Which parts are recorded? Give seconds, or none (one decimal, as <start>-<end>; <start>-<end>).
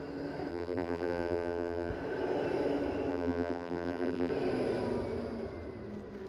0.0-0.5; 1.9-3.1; 4.3-6.3